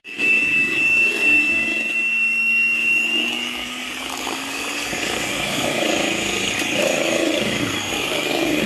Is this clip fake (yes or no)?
yes